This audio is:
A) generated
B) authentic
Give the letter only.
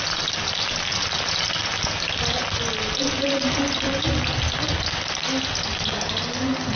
B